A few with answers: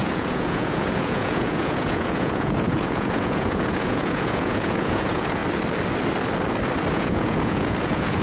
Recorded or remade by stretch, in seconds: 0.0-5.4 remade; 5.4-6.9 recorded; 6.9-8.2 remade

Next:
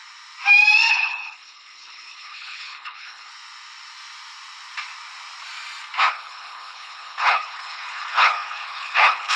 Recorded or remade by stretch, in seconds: 0.0-0.9 recorded; 0.9-3.3 remade; 3.3-6.1 recorded; 6.1-9.4 remade

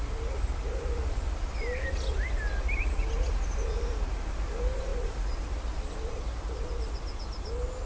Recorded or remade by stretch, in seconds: 0.0-7.9 recorded

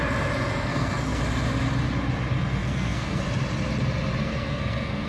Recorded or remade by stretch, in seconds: 0.0-0.5 recorded; 0.5-1.2 remade; 1.2-2.6 recorded; 2.6-3.2 remade; 3.2-4.2 recorded; 4.2-5.1 remade

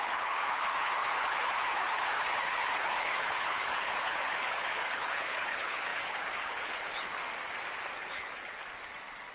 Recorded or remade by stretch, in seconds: 0.0-7.2 remade; 7.2-8.0 recorded; 8.0-8.6 remade; 8.6-9.3 recorded

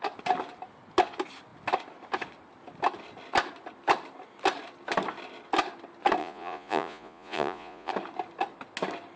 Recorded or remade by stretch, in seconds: 0.0-6.2 recorded; 6.2-7.9 remade; 7.9-9.2 recorded